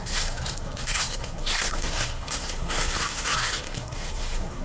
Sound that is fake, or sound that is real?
fake